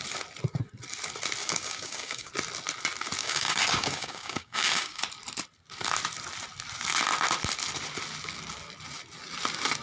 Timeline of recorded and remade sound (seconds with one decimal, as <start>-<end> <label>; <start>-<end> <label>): 0.0-1.4 recorded; 1.4-2.3 remade; 2.3-3.2 recorded; 3.2-5.0 remade; 5.0-9.8 recorded